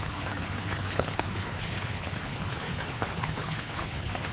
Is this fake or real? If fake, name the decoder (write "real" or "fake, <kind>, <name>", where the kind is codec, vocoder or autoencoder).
fake, codec, HILCodec